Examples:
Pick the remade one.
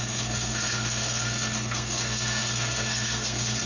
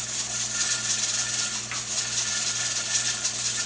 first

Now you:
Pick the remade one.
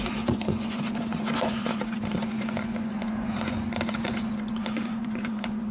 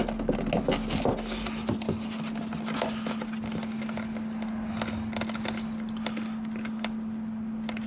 first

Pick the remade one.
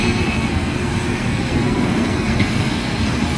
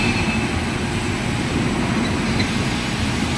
first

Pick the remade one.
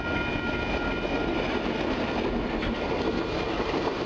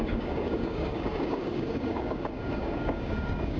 second